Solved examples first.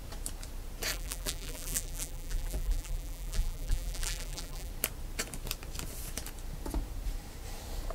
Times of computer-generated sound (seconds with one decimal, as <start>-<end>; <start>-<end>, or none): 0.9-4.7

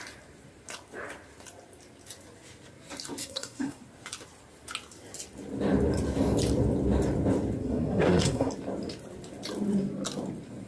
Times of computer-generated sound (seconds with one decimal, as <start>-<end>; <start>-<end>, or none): 3.2-3.8; 7.6-8.5

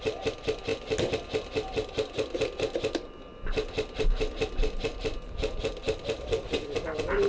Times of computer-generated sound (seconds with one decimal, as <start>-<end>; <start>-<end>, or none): none